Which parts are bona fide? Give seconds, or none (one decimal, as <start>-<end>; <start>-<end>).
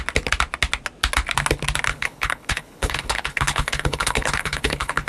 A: 0.0-1.9